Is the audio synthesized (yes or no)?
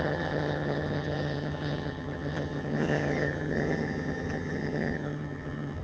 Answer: yes